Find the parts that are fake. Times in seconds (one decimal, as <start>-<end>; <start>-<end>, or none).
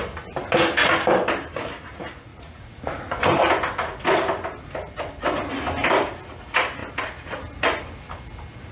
2.3-3.2